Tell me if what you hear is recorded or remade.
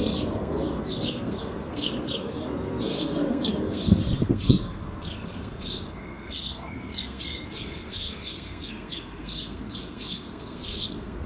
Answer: remade